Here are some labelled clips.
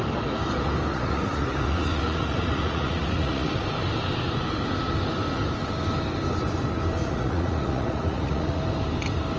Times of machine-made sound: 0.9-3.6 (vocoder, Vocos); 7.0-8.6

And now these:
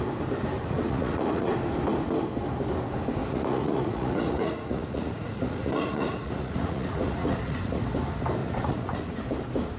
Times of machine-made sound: 0.6-1.5 (vocoder, Vocos); 3.2-7.8; 8.4-9.2